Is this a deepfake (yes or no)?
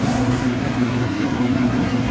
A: yes